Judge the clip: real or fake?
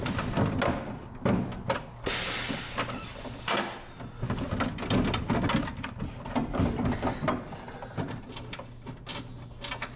real